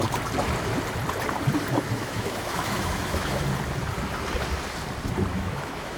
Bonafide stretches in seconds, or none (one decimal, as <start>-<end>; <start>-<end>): 0.0-2.0; 3.4-5.3